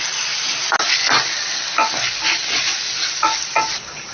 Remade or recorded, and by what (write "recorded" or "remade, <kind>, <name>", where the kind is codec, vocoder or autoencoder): recorded